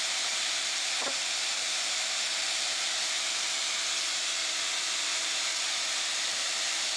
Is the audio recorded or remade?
remade